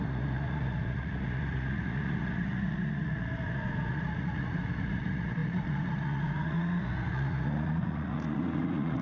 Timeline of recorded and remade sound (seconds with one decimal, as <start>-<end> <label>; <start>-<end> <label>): 0.0-9.0 remade